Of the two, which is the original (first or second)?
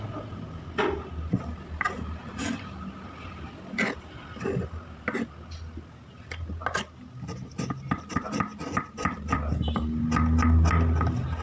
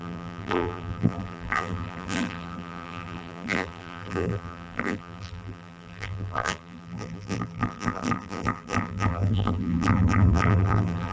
first